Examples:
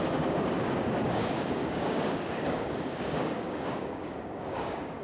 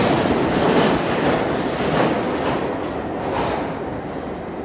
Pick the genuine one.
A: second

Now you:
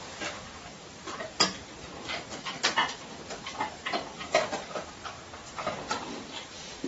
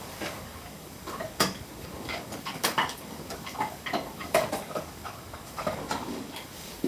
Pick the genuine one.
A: first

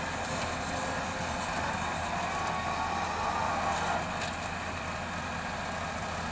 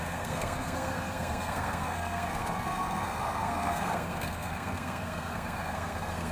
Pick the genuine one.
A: first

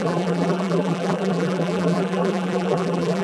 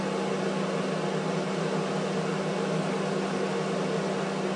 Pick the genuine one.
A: second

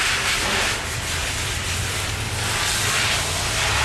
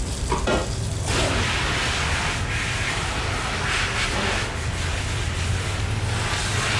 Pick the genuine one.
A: second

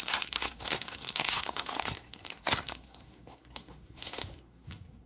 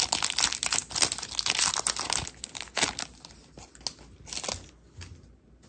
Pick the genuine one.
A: second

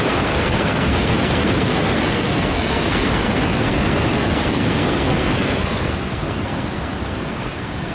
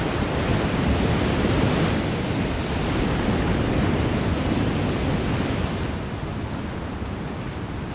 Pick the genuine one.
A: second